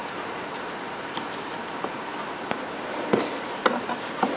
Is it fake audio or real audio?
fake